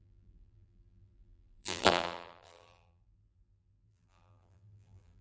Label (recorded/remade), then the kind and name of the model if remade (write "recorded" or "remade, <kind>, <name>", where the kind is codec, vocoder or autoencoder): remade, vocoder, BigVGAN v2